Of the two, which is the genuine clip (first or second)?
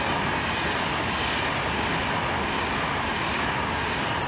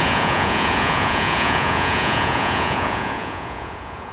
first